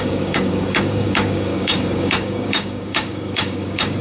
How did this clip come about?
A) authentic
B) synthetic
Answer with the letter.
B